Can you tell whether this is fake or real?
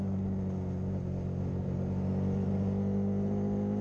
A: real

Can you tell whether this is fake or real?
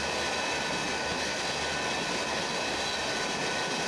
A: real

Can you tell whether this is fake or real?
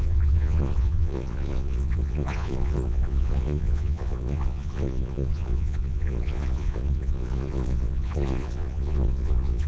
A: fake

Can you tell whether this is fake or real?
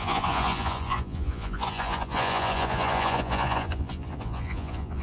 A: fake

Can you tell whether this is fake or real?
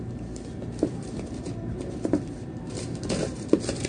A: fake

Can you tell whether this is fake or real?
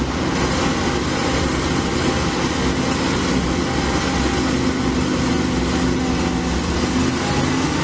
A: real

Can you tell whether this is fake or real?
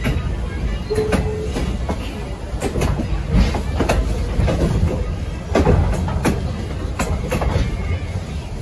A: real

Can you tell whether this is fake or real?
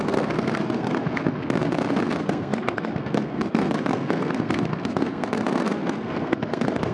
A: fake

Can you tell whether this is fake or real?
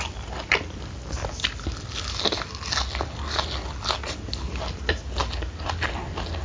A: real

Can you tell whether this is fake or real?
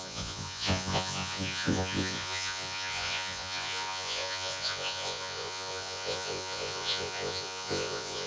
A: fake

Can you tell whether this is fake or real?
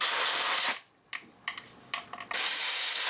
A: fake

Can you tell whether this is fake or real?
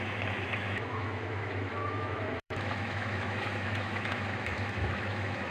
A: fake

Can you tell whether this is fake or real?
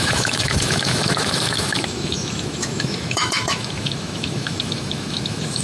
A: fake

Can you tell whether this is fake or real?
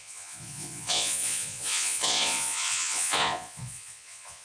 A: fake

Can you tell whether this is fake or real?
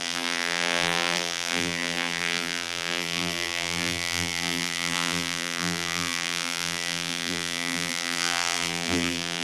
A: fake